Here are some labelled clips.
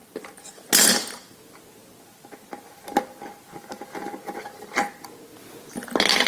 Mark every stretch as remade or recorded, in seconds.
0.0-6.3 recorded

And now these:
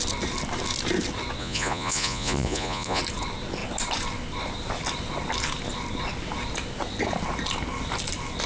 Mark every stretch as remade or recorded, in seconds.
0.0-1.4 recorded; 1.4-3.0 remade; 3.0-8.5 recorded

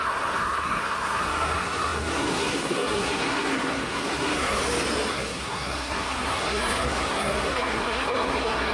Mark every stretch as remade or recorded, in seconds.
0.0-4.6 remade; 4.6-5.1 recorded; 5.1-8.7 remade